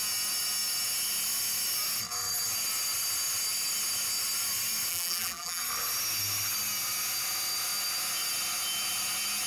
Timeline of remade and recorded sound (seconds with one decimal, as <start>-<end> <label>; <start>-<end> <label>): 0.0-4.9 recorded; 4.9-5.6 remade; 5.6-9.5 recorded

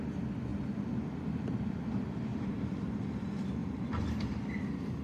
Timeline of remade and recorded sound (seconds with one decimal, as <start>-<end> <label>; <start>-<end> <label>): 0.0-2.3 recorded; 2.3-2.9 remade; 2.9-5.0 recorded

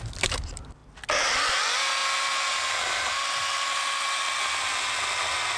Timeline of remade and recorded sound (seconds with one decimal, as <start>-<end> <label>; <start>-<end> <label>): 0.0-5.6 recorded

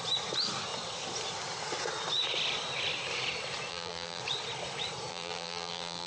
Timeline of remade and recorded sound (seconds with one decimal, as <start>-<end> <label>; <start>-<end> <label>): 0.0-3.7 recorded; 3.7-4.2 remade; 4.2-5.1 recorded; 5.1-6.1 remade

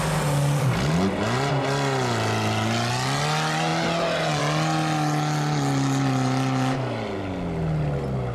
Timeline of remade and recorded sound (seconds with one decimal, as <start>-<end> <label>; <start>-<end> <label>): 0.0-8.3 recorded

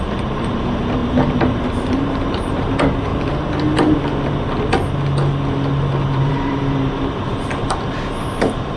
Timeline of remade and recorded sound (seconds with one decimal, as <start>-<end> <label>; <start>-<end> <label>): 0.0-3.1 remade; 3.1-5.5 recorded; 5.5-7.2 remade; 7.2-7.9 recorded; 7.9-8.8 remade